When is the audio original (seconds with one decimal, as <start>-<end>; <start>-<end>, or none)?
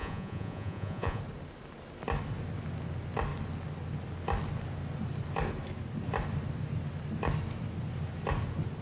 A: 1.2-8.8